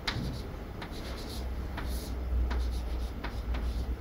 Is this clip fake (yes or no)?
no